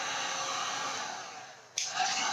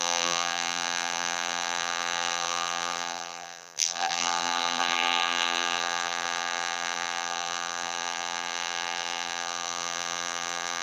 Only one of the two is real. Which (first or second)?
first